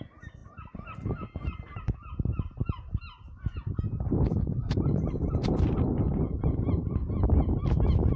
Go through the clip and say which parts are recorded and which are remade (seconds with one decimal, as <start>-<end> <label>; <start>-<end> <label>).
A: 0.0-4.6 recorded; 4.6-5.8 remade; 5.8-8.2 recorded